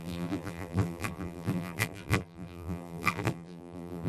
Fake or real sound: fake